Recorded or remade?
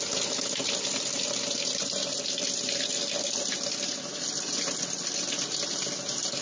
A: recorded